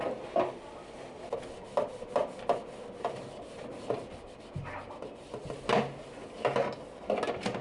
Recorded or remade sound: recorded